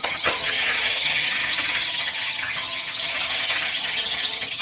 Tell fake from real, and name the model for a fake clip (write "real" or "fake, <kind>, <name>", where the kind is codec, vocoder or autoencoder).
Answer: fake, vocoder, HiFi-GAN